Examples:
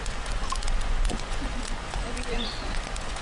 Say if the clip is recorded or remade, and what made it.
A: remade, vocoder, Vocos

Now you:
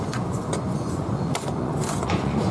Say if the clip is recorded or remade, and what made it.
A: remade, vocoder, Vocos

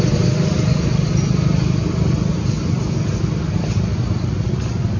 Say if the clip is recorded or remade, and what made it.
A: recorded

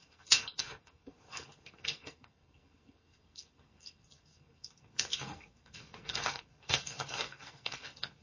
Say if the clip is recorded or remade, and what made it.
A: remade, codec, SNAC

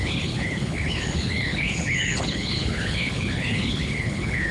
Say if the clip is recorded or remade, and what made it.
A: remade, codec, HILCodec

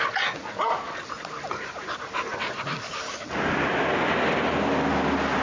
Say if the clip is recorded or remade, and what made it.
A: recorded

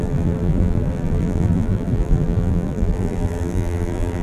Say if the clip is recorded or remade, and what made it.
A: remade, vocoder, BigVGAN v2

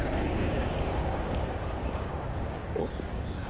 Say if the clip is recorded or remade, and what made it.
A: remade, codec, DAC